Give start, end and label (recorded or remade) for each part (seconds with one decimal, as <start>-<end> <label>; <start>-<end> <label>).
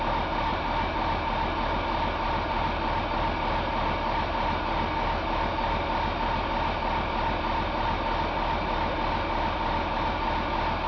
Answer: 0.0-10.9 recorded